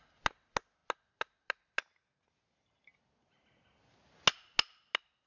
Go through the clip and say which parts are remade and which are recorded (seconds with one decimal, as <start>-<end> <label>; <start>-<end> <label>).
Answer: 0.0-5.3 recorded